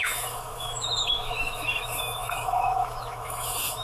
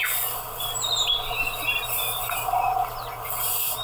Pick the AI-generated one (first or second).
first